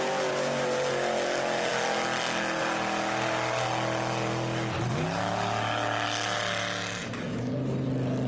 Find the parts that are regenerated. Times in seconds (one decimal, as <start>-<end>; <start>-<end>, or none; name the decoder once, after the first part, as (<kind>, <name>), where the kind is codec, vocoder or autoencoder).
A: 7.0-7.5 (autoencoder, DAC-VAE)